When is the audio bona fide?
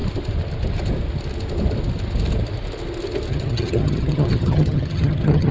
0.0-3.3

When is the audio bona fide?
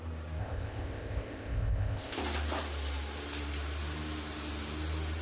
0.0-0.4; 2.2-5.2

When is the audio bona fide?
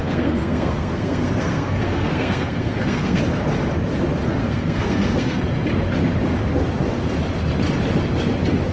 3.2-4.4; 5.4-8.7